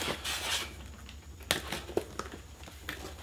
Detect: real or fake real